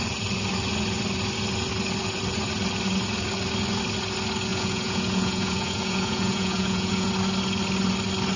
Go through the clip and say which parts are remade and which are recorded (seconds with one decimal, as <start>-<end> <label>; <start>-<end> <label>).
0.0-4.5 recorded; 4.5-7.1 remade; 7.1-8.4 recorded